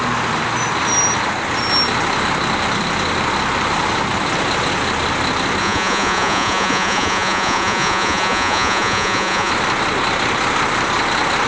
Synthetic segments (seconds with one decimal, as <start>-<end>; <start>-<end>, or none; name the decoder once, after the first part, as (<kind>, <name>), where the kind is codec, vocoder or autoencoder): 5.6-9.5 (vocoder, Vocos)